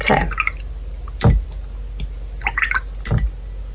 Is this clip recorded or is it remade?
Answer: recorded